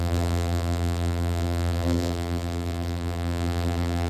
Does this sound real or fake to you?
fake